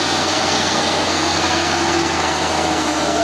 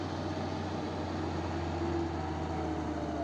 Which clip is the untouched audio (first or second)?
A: second